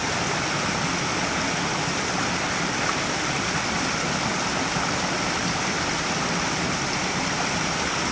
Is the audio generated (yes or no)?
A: no